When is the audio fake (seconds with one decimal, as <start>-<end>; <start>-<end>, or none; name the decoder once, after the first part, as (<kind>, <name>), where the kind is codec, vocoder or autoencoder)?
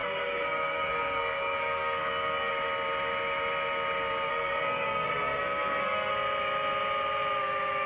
0.0-2.5 (codec, SNAC); 4.3-6.1